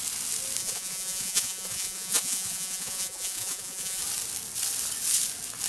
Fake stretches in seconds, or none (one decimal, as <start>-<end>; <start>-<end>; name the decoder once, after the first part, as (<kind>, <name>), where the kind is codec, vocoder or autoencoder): 0.6-4.0 (vocoder, Vocos)